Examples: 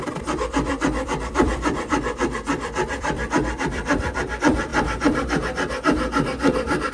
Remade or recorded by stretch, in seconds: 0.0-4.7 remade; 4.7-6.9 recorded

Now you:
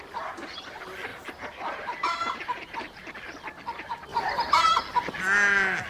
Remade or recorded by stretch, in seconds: 0.0-1.1 recorded; 1.1-3.1 remade; 3.1-4.1 recorded; 4.1-4.8 remade; 4.8-5.9 recorded

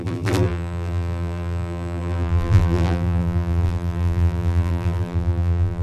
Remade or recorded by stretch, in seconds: 0.0-5.8 remade

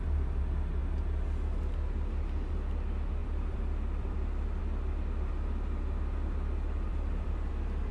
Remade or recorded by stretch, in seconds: 0.0-3.2 recorded; 3.2-4.6 remade; 4.6-6.9 recorded; 6.9-7.5 remade; 7.5-7.9 recorded

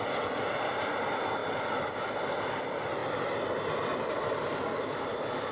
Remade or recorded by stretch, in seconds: 0.0-5.5 recorded

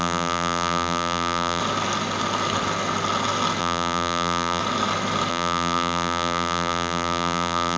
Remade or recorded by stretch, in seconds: 0.0-1.6 remade; 1.6-3.6 recorded; 3.6-4.6 remade; 4.6-5.3 recorded; 5.3-7.8 remade

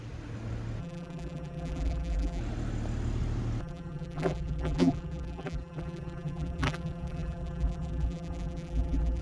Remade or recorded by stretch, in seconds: 0.0-0.8 recorded; 0.8-2.4 remade; 2.4-3.6 recorded; 3.6-9.2 remade

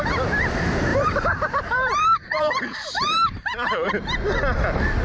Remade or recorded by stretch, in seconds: 0.0-0.9 recorded; 0.9-3.9 remade; 3.9-5.0 recorded